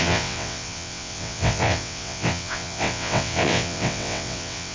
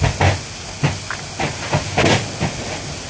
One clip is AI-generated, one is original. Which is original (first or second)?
second